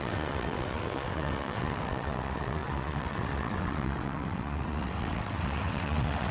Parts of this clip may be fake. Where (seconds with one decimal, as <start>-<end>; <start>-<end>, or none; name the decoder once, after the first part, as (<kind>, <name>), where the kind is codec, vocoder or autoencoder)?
0.0-6.3 (vocoder, WaveNeXt)